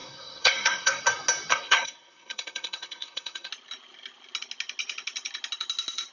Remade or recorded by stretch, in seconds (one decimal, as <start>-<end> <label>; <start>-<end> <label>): 0.0-1.0 remade; 1.0-1.5 recorded; 1.5-3.5 remade; 3.5-6.1 recorded